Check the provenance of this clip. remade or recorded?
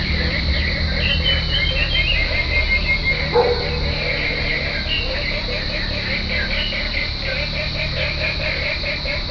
recorded